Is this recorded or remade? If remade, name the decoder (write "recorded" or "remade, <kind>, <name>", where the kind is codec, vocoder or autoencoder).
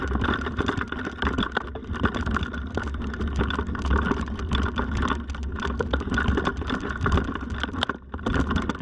recorded